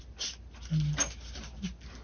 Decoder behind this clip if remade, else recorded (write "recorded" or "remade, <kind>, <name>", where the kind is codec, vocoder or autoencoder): recorded